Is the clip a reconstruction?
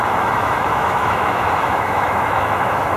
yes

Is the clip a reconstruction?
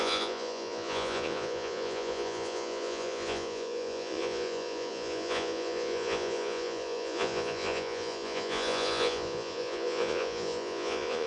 yes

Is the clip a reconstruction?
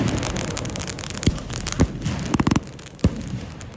no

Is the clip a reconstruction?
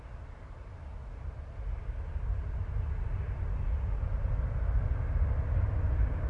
no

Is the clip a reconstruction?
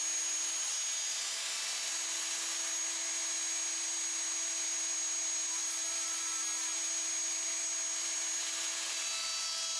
no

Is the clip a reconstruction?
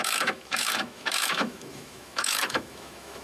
yes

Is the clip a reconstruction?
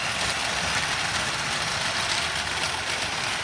no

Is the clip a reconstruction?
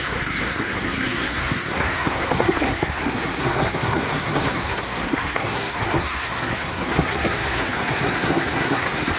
yes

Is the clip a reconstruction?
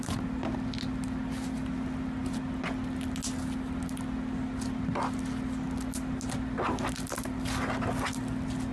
no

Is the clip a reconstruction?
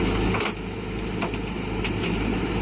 no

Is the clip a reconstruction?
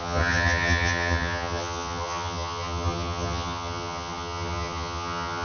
yes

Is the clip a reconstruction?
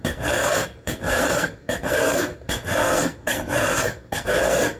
yes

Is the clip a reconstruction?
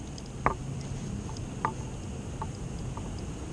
no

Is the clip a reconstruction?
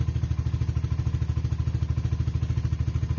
no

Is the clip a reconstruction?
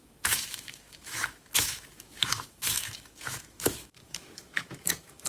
yes